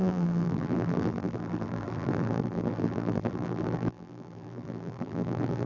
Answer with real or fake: fake